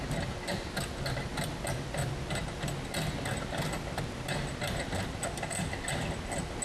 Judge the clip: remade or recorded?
recorded